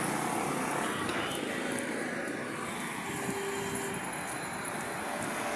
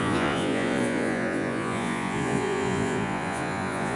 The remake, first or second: second